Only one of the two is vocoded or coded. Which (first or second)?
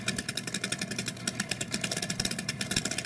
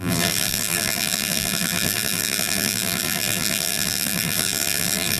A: second